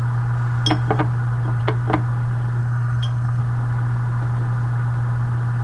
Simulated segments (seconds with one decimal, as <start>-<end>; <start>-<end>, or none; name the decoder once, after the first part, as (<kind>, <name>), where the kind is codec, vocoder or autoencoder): 2.6-3.4 (codec, SNAC)